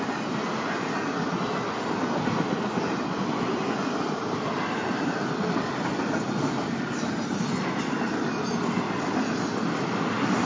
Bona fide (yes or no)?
yes